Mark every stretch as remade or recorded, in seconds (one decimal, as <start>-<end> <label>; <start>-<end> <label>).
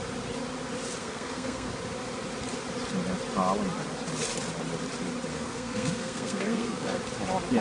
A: 0.0-1.0 recorded; 1.0-1.7 remade; 1.7-5.3 recorded; 5.3-7.0 remade; 7.0-7.6 recorded